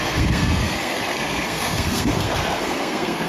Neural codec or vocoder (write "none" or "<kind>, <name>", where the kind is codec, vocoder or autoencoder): codec, SNAC